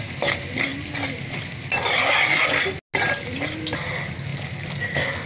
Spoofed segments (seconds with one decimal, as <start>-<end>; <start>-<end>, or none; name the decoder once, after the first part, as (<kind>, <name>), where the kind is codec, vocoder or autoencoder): none